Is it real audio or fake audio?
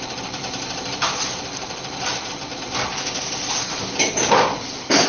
real